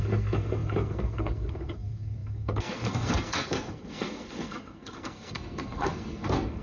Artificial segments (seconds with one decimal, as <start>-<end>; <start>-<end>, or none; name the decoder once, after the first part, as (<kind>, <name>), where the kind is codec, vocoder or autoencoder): 0.0-6.6 (codec, SNAC)